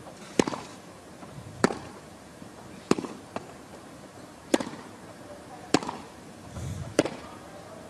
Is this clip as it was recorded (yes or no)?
no